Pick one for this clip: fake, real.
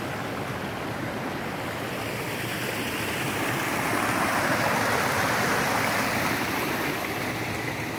real